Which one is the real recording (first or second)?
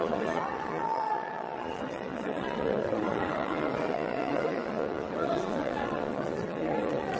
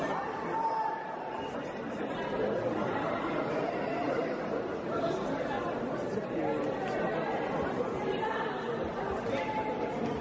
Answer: second